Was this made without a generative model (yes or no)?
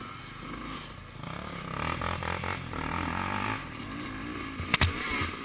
yes